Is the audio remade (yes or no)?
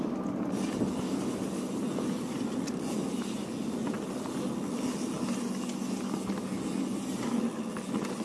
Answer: no